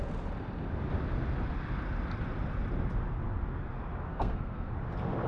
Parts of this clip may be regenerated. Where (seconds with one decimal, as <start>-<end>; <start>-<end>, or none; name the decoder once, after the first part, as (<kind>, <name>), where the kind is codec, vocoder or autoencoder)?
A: 4.1-4.7 (codec, SNAC)